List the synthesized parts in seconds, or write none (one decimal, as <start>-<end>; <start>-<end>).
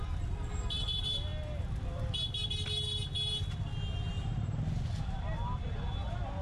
none